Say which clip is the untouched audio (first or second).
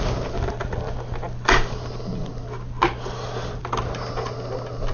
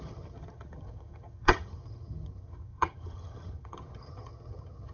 first